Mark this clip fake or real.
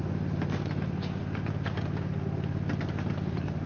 real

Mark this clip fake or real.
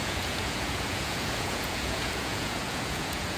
fake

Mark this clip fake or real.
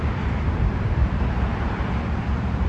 fake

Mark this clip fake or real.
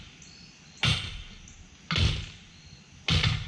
real